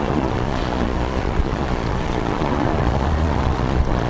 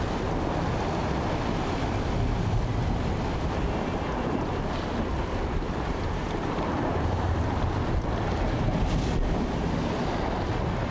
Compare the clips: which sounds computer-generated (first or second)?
first